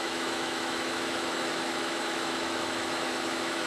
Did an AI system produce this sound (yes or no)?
yes